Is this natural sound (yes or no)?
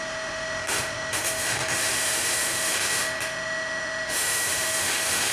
no